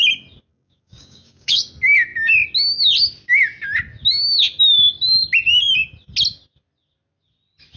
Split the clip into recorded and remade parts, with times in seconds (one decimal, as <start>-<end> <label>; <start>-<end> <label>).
0.0-0.5 recorded; 0.5-1.6 remade; 1.6-7.8 recorded